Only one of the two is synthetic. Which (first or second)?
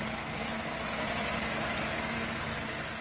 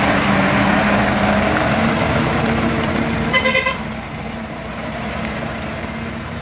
second